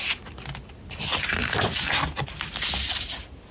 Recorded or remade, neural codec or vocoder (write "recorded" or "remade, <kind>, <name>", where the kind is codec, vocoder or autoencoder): recorded